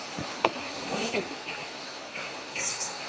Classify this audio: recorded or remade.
remade